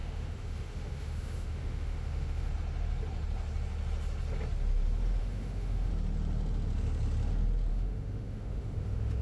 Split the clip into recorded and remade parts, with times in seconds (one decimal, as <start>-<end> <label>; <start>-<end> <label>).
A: 0.0-2.5 remade; 2.5-5.2 recorded; 5.2-5.9 remade; 5.9-7.7 recorded; 7.7-9.2 remade